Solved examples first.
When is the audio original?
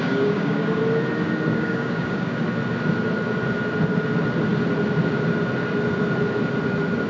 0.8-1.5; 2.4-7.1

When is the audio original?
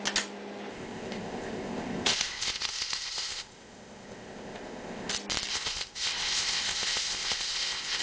0.0-0.7; 5.1-5.5